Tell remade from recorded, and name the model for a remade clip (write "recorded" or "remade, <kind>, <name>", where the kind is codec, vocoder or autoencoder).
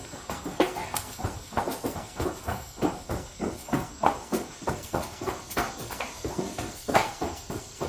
remade, codec, SNAC